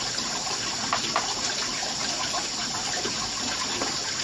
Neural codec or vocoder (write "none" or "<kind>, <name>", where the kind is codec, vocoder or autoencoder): none